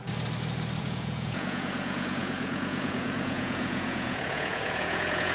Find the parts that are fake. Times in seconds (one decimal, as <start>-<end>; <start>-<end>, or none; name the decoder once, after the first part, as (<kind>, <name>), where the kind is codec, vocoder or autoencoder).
0.8-5.3 (vocoder, Vocos)